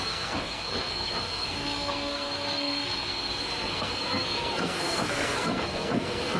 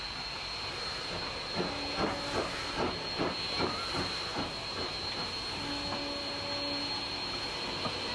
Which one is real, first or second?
second